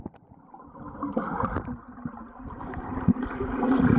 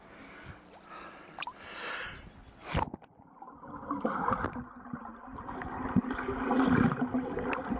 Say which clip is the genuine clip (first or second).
second